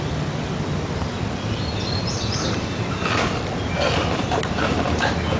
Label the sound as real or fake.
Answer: real